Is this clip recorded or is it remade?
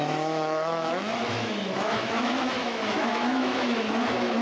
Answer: remade